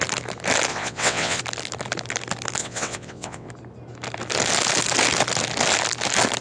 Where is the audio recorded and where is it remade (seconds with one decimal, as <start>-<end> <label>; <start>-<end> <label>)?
0.0-0.7 recorded; 0.7-1.4 remade; 1.4-2.6 recorded; 2.6-3.5 remade; 3.5-6.4 recorded